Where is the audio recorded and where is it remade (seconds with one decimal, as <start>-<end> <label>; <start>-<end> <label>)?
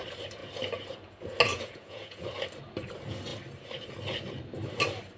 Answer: 0.0-1.5 recorded; 1.5-2.2 remade; 2.2-5.2 recorded